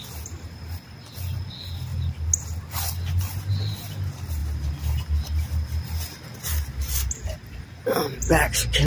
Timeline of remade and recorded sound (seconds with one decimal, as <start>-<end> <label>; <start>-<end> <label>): 0.0-8.9 recorded

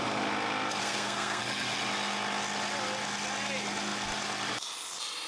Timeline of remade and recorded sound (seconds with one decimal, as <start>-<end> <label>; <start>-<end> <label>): 0.0-0.8 recorded; 0.8-1.4 remade; 1.4-5.3 recorded

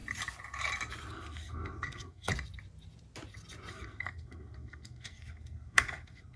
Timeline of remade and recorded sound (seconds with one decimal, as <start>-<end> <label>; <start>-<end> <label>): 0.0-1.1 recorded; 1.1-2.3 remade; 2.3-3.7 recorded; 3.7-6.4 remade